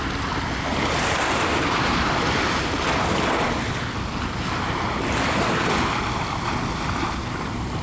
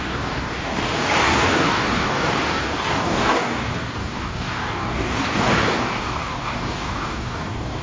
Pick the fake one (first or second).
second